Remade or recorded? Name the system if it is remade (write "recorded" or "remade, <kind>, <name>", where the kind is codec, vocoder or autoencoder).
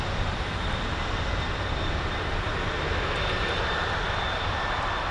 recorded